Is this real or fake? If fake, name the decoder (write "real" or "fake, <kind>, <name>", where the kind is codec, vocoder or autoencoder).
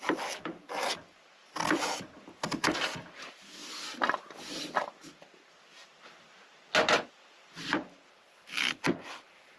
real